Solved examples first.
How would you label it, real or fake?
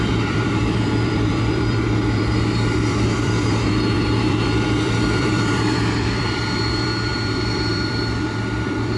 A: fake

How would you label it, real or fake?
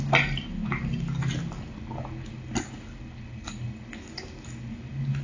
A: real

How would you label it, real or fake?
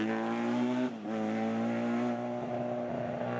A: real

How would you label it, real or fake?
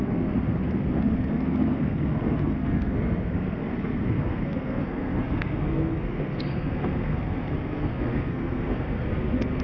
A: fake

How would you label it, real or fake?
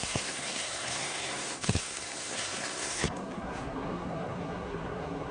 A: fake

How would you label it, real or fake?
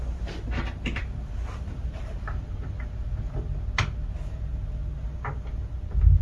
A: real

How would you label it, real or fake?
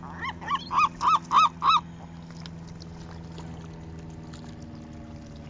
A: real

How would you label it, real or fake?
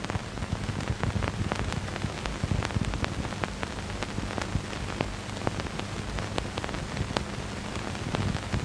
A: real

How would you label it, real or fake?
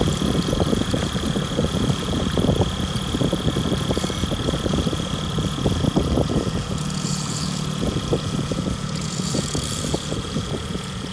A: fake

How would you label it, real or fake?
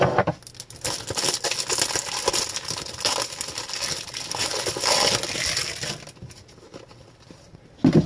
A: real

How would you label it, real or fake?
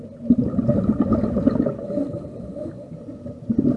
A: fake